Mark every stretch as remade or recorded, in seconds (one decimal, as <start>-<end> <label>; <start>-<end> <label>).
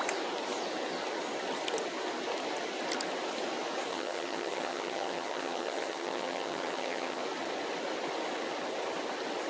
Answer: 0.0-3.9 recorded; 3.9-7.2 remade; 7.2-9.5 recorded